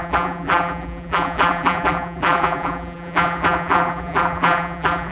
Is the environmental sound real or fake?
fake